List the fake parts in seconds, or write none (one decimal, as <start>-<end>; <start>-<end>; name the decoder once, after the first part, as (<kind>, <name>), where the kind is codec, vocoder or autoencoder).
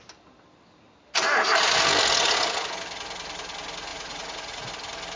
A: 3.9-4.7 (vocoder, Vocos)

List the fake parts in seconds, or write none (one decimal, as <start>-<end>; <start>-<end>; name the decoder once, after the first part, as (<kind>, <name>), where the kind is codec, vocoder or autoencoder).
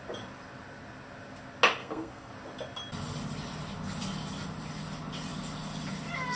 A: 1.8-2.3 (codec, SNAC)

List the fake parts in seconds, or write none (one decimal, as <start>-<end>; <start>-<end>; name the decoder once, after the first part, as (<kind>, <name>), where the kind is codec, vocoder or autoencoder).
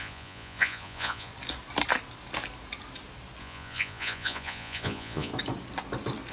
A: 0.0-1.3 (vocoder, Vocos); 3.4-5.3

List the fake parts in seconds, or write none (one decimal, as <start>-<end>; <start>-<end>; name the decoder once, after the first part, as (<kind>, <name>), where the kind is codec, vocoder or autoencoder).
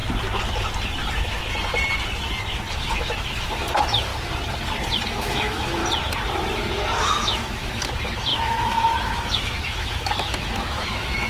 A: 2.7-4.1 (autoencoder, DAC-VAE); 5.1-5.8; 7.0-11.3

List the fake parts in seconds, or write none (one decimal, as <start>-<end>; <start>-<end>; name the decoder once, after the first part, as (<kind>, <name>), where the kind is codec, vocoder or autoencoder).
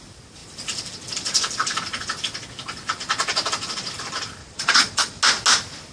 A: 4.4-5.2 (vocoder, Vocos)